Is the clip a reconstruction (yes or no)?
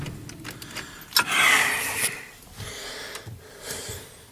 no